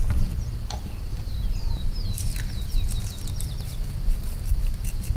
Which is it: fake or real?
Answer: fake